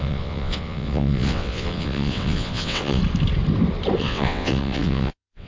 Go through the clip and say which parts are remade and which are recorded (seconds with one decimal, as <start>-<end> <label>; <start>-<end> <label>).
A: 0.0-3.0 remade; 3.0-4.0 recorded; 4.0-5.5 remade